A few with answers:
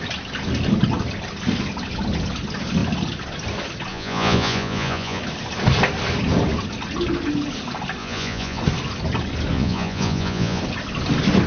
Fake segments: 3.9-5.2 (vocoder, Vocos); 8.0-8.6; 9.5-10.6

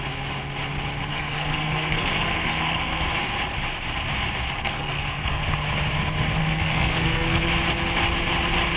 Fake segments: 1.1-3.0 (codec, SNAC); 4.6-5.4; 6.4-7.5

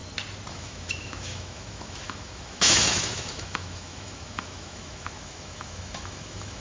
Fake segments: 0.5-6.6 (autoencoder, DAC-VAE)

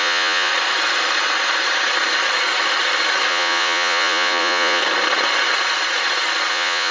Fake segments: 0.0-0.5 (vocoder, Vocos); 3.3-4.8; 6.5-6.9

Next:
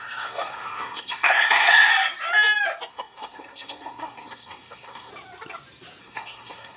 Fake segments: 0.0-1.9 (codec, SNAC); 2.9-5.1; 6.0-6.8

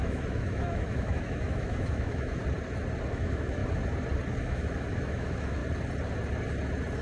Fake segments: 0.0-2.4 (autoencoder, DAC-VAE); 3.1-3.6; 4.4-5.6

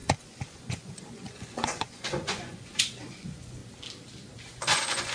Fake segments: 0.0-3.6 (vocoder, Vocos); 4.4-5.1